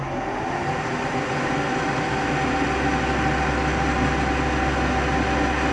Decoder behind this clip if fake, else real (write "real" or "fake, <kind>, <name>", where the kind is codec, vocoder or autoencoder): real